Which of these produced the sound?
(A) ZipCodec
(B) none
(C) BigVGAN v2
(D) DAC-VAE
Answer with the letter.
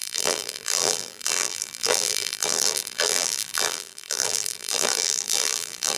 C